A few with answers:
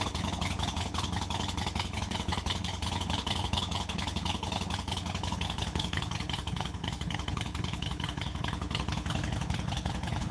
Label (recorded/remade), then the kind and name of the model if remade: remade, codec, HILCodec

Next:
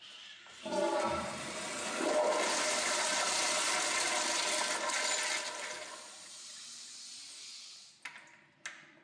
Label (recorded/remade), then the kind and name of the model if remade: recorded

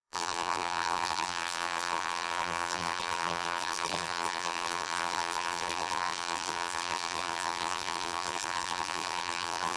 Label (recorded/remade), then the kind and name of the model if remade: remade, vocoder, BigVGAN v2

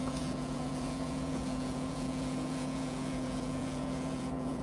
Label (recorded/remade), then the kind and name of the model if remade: remade, vocoder, Vocos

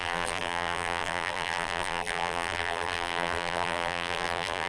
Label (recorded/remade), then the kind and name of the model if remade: remade, vocoder, BigVGAN v2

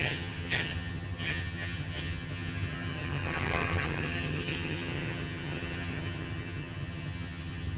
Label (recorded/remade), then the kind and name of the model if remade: remade, vocoder, HiFi-GAN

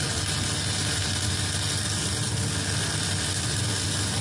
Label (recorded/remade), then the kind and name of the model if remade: recorded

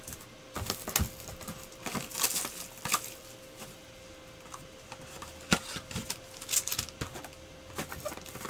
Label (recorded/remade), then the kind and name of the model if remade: recorded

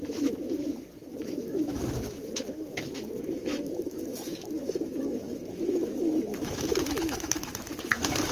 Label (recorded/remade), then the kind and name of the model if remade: remade, autoencoder, DAC-VAE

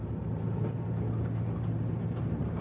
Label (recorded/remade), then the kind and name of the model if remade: recorded